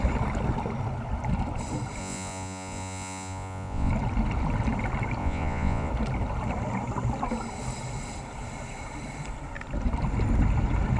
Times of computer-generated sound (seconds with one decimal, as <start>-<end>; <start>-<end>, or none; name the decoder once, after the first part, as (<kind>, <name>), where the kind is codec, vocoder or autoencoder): 2.0-3.9 (vocoder, Vocos); 5.2-5.9